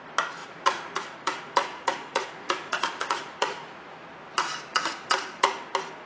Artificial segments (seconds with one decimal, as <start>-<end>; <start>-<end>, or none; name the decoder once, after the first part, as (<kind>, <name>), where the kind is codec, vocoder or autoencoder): 0.4-4.1 (vocoder, Vocos); 4.7-5.5